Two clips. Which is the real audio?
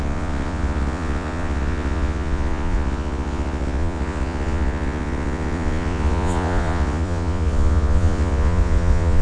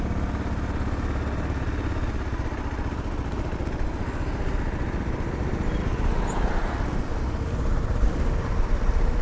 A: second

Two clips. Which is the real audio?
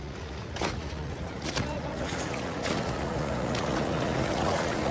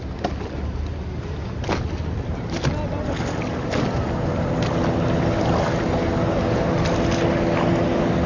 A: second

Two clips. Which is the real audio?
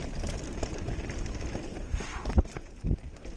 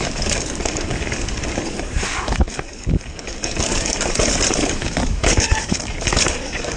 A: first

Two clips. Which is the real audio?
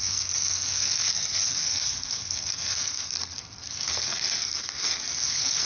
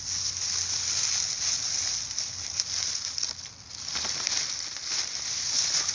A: second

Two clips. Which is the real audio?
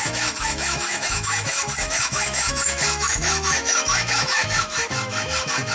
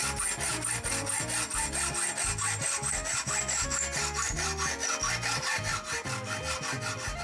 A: second